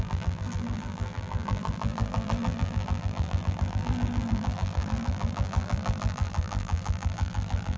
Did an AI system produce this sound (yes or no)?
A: yes